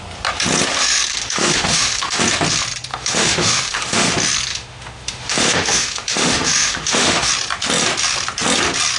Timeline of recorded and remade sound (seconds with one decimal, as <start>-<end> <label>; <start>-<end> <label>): 0.0-0.7 recorded; 0.7-2.2 remade; 2.2-2.9 recorded; 2.9-4.1 remade; 4.1-4.5 recorded; 4.5-7.3 remade; 7.3-9.0 recorded

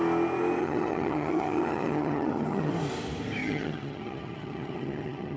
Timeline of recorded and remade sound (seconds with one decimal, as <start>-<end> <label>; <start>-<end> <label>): 0.0-0.6 recorded; 0.6-2.7 remade; 2.7-3.4 recorded; 3.4-5.4 remade

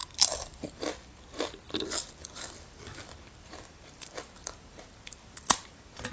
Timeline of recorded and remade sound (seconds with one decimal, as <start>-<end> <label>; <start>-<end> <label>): 0.0-0.9 remade; 0.9-2.2 recorded; 2.2-6.1 remade

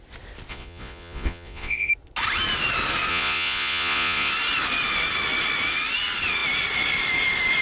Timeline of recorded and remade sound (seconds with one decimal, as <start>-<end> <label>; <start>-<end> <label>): 0.0-0.5 recorded; 0.5-1.9 remade; 1.9-3.1 recorded; 3.1-4.3 remade; 4.3-7.6 recorded

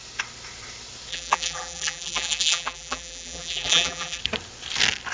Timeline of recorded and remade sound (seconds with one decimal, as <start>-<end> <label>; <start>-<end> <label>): 0.0-1.1 recorded; 1.1-4.2 remade; 4.2-5.1 recorded

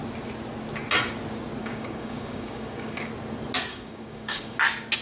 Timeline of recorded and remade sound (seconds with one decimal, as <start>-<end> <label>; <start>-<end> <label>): 0.0-1.6 recorded; 1.6-3.1 remade; 3.1-3.7 recorded; 3.7-4.6 remade; 4.6-5.0 recorded

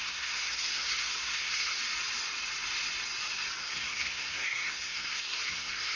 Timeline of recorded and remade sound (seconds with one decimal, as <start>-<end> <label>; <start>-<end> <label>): 0.0-1.8 remade; 1.8-3.6 recorded; 3.6-6.0 remade

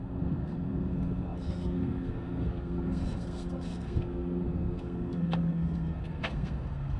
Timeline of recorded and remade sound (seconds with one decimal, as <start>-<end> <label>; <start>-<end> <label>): 0.0-7.0 remade